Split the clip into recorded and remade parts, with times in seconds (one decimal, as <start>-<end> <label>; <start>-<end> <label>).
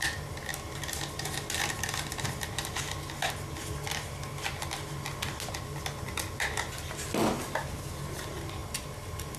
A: 0.0-9.4 recorded